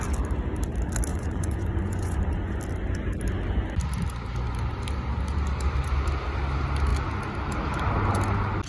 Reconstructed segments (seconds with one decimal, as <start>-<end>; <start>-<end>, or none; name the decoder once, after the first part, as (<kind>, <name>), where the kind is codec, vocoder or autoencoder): 1.1-2.6 (vocoder, Vocos)